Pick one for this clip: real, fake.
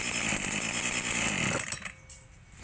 real